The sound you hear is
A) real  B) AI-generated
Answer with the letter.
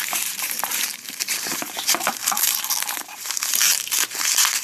B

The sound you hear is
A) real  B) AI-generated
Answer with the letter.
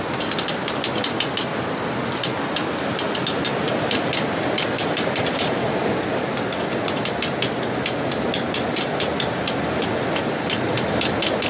A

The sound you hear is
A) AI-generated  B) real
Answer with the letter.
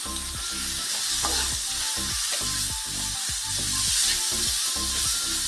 B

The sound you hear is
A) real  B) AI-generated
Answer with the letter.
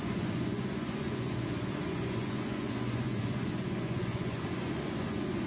B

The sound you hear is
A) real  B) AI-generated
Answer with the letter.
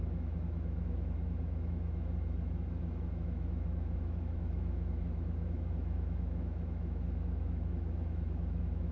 B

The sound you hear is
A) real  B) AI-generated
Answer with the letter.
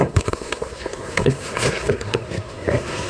B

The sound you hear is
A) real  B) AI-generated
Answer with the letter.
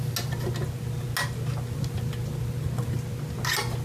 A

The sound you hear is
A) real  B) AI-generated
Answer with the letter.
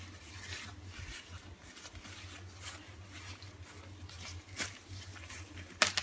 A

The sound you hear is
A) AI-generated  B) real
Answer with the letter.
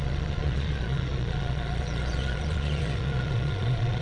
A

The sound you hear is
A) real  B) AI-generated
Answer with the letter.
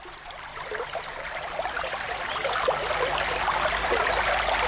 B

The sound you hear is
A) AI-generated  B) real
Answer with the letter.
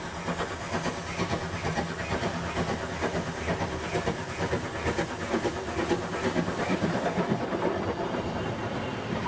B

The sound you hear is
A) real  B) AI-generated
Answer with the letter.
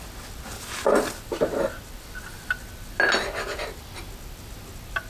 A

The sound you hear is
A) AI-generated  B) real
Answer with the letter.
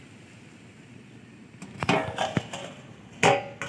B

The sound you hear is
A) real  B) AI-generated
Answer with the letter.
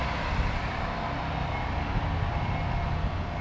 A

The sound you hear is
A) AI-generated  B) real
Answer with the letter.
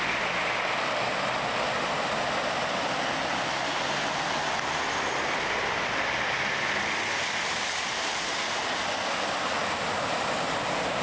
B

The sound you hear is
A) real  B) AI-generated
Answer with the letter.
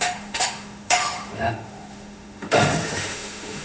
B